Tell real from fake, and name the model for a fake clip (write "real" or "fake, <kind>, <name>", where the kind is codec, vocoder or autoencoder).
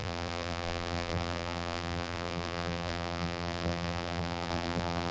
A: fake, vocoder, BigVGAN v2